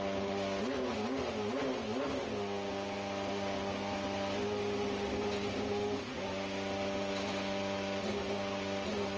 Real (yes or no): yes